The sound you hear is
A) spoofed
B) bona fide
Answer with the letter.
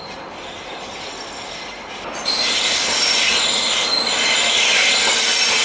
A